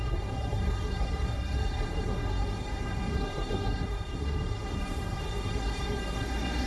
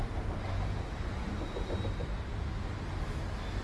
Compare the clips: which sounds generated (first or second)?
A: first